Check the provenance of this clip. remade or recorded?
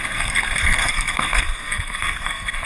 remade